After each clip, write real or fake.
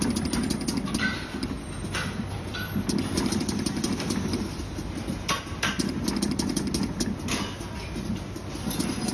real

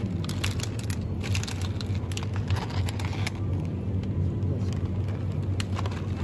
real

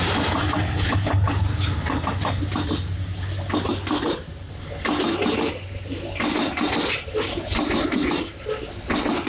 real